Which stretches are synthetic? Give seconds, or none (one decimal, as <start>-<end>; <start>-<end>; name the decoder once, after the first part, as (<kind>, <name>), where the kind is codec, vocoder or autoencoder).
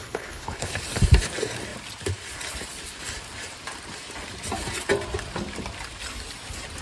0.0-0.8 (codec, HILCodec)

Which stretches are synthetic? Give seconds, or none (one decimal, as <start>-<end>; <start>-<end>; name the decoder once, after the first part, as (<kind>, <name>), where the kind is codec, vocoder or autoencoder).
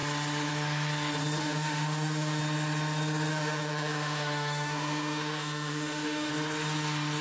1.4-2.4 (autoencoder, DAC-VAE); 3.3-6.3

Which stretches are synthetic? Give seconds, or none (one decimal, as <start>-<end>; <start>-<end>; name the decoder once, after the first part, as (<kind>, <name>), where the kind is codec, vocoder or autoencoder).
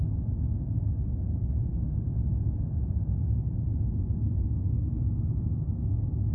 none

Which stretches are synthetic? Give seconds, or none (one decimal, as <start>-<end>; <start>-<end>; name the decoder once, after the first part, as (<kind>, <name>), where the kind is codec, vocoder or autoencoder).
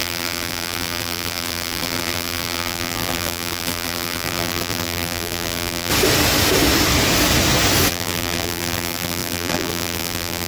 0.0-5.9 (vocoder, BigVGAN v2); 7.9-10.5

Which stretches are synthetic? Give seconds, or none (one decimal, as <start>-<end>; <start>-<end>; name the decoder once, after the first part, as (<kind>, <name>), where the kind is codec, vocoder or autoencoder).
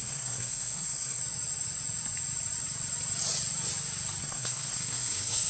0.0-1.2 (codec, SNAC); 4.2-5.5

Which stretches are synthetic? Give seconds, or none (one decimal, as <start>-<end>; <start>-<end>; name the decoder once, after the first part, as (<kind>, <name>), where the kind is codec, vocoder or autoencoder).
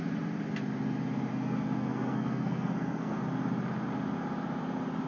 1.3-3.2 (codec, SNAC)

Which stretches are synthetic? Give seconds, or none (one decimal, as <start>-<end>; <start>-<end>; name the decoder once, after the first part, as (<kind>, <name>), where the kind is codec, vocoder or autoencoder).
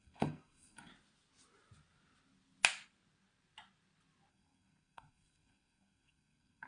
0.0-0.9 (codec, SNAC); 4.3-6.7